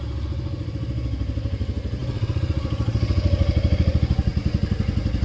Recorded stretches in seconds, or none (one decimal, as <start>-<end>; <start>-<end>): 0.0-5.2